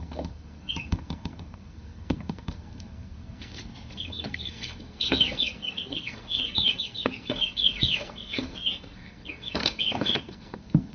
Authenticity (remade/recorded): remade